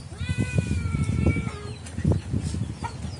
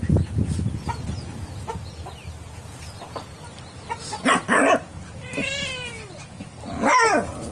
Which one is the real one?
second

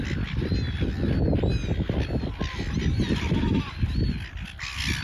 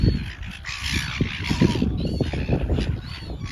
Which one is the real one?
first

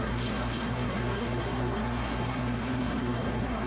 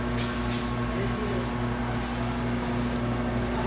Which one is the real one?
second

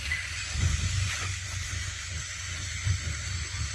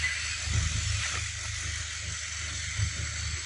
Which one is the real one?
second